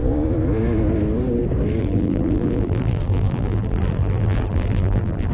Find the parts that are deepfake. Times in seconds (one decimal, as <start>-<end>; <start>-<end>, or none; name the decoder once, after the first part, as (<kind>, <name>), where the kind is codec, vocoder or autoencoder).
1.8-5.3 (vocoder, BigVGAN v2)